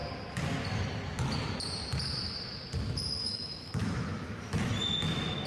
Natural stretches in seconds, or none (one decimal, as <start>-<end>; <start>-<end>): 0.0-3.2; 4.7-5.5